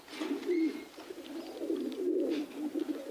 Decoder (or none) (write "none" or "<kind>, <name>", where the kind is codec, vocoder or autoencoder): none